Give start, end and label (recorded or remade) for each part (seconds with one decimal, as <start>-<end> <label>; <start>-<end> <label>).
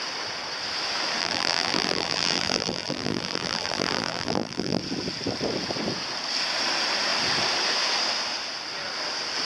0.0-1.2 recorded; 1.2-4.8 remade; 4.8-9.4 recorded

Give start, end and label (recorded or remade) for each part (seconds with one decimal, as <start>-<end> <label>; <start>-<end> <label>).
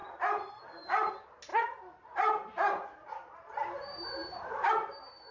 0.0-1.1 remade; 1.1-1.5 recorded; 1.5-4.7 remade; 4.7-5.3 recorded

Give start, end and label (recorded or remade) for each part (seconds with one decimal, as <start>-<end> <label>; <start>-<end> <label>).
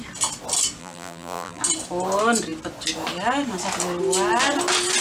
0.0-0.8 recorded; 0.8-1.6 remade; 1.6-5.0 recorded